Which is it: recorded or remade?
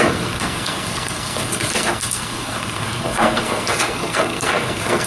remade